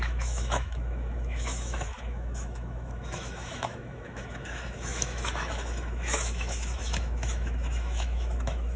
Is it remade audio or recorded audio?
remade